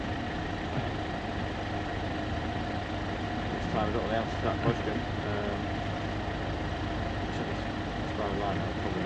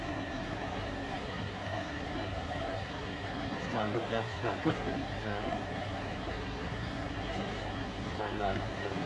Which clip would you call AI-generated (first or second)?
second